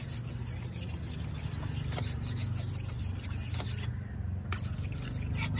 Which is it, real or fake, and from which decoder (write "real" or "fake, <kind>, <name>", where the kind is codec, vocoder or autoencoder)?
real